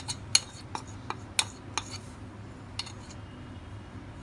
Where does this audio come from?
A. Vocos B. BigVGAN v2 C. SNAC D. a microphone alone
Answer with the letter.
D